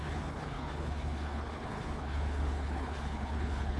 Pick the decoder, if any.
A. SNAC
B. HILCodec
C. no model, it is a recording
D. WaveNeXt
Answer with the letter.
B